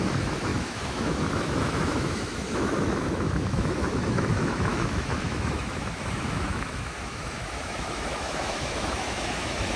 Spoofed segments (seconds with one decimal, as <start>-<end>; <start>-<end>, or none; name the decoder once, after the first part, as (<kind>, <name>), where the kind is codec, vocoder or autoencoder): 0.0-9.8 (autoencoder, DAC-VAE)